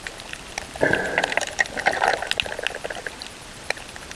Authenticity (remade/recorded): recorded